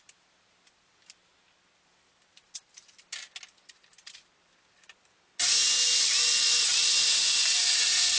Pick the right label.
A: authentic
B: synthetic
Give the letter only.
A